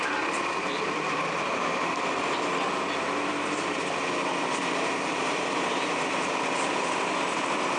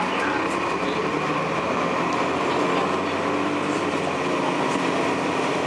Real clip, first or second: second